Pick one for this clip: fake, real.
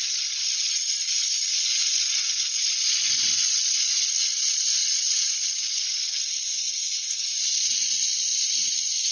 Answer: real